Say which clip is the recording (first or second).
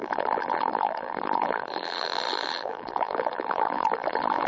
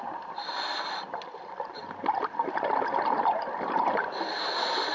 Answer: second